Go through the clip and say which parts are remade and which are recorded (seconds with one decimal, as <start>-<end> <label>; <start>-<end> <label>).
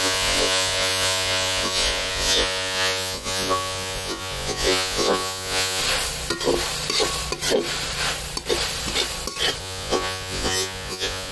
0.0-5.8 remade; 5.8-9.6 recorded; 9.6-11.3 remade